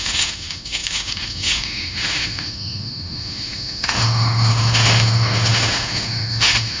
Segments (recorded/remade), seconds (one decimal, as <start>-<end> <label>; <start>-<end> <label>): 0.0-6.8 remade